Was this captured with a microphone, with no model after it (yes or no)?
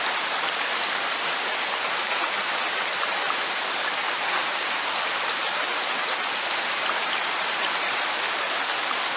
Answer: yes